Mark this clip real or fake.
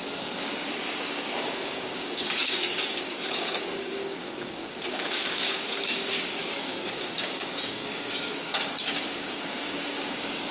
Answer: fake